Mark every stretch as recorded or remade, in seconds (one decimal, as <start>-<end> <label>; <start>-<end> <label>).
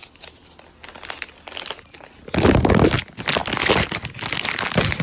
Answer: 0.0-5.0 recorded